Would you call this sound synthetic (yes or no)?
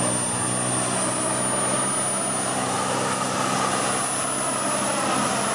no